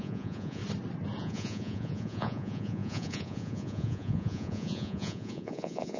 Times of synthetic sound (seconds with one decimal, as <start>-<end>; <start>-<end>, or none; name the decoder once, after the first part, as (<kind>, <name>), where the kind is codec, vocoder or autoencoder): 0.0-0.6 (vocoder, Vocos); 1.2-6.0